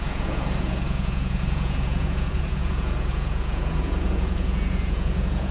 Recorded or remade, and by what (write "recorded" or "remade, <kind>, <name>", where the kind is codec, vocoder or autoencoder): remade, vocoder, Vocos